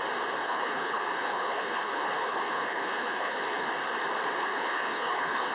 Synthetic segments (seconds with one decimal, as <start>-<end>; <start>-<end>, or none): 0.4-3.7; 4.4-5.5